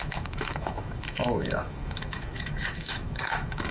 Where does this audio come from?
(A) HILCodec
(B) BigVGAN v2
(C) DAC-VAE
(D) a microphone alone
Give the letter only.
C